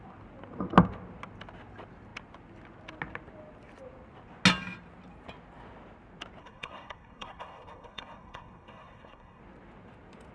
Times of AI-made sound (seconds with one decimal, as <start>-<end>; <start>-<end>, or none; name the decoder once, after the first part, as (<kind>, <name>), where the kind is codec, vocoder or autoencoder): 6.4-9.4 (codec, SNAC)